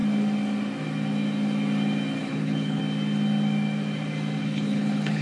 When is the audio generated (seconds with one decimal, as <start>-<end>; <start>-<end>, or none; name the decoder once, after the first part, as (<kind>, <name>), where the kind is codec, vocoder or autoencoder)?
2.2-2.8 (codec, HILCodec); 4.4-5.2